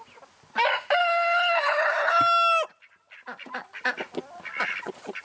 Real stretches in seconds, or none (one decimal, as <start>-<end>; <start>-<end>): 0.0-1.0; 2.2-5.2